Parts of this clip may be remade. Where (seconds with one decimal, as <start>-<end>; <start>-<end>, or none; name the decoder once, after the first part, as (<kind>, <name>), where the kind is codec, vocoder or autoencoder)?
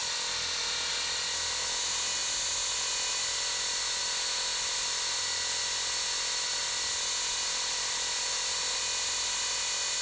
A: none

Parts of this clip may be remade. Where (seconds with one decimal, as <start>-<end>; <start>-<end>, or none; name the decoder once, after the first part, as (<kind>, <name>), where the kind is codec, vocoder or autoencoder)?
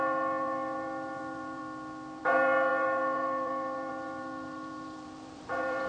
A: 0.0-1.6 (vocoder, BigVGAN v2); 2.2-5.9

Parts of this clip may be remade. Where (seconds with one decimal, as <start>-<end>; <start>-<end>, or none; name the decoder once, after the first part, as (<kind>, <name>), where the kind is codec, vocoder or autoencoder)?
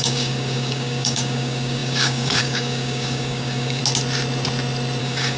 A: 0.0-3.8 (codec, DAC); 5.0-5.4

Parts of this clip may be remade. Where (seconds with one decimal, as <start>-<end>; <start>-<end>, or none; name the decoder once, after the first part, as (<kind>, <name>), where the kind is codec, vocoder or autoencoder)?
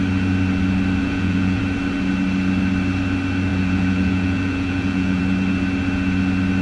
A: 1.0-1.6 (vocoder, Vocos); 3.5-5.2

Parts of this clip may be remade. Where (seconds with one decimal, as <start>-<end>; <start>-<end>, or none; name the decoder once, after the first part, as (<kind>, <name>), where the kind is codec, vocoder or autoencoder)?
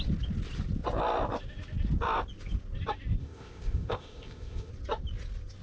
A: 3.2-4.7 (codec, ZipCodec)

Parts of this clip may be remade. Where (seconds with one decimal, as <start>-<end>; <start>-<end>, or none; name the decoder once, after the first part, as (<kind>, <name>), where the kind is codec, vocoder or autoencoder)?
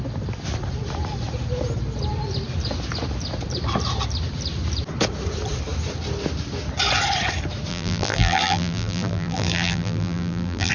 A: 7.7-10.7 (vocoder, BigVGAN v2)